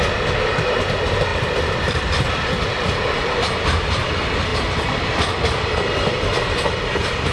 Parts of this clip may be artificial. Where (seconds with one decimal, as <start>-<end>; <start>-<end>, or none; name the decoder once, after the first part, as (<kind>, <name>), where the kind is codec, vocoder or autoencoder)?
1.3-4.1 (vocoder, BigVGAN v2); 4.5-7.3